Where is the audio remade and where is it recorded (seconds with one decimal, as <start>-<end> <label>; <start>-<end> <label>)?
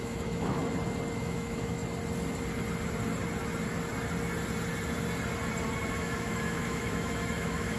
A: 0.0-0.6 remade; 0.6-1.2 recorded; 1.2-1.8 remade; 1.8-5.9 recorded; 5.9-7.8 remade